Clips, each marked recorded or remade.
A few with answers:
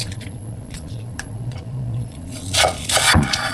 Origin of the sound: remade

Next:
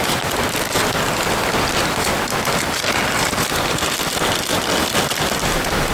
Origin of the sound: recorded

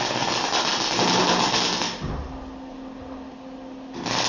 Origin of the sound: recorded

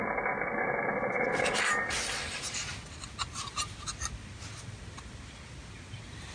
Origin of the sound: recorded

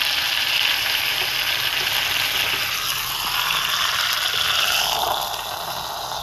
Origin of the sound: recorded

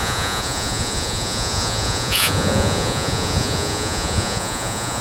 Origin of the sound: remade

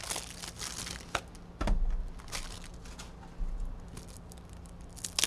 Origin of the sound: recorded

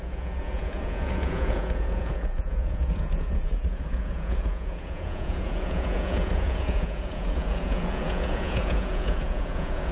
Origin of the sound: remade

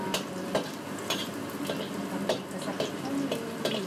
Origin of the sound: recorded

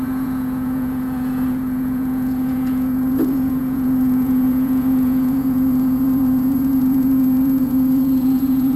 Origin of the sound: remade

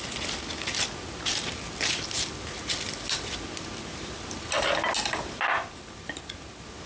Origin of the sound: recorded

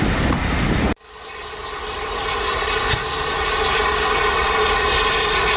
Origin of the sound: recorded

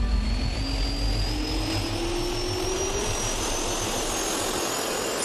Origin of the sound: recorded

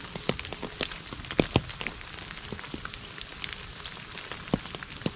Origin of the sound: recorded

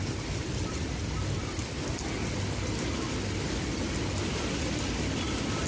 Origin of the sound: recorded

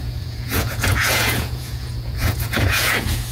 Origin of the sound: remade